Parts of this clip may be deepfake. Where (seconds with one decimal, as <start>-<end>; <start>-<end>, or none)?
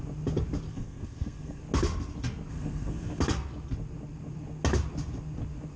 0.7-1.6; 2.5-3.2